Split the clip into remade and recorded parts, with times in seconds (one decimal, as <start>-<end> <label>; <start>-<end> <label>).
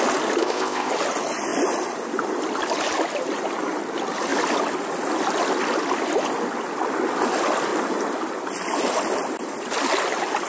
0.0-0.4 recorded; 0.4-0.9 remade; 0.9-10.5 recorded